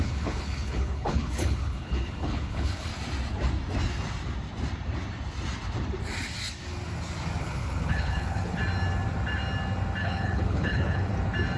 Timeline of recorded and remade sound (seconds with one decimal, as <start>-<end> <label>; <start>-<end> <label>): 0.0-2.9 remade; 2.9-7.4 recorded; 7.4-8.6 remade; 8.6-10.0 recorded; 10.0-11.1 remade; 11.1-11.6 recorded